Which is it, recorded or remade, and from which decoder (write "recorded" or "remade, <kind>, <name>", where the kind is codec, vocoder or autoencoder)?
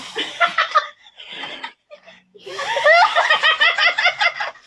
recorded